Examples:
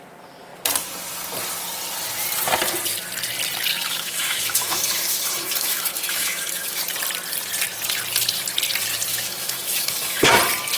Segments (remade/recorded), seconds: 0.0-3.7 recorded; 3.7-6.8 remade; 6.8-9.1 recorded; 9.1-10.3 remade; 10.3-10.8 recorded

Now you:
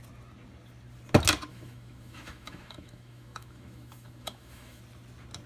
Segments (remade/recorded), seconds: 0.0-1.5 recorded; 1.5-4.8 remade; 4.8-5.5 recorded

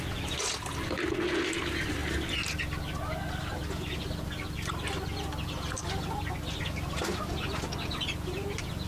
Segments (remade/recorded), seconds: 0.0-8.9 recorded